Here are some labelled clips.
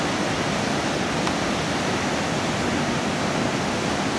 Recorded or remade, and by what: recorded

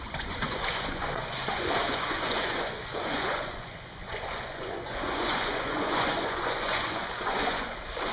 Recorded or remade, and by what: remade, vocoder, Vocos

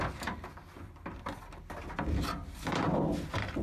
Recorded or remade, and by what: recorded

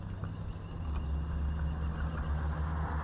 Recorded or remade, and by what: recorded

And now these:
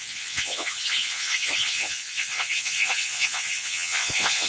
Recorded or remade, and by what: remade, vocoder, WaveNeXt